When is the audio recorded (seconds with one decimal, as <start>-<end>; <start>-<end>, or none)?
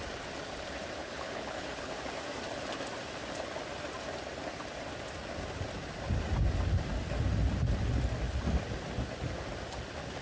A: 0.0-1.0; 1.9-10.2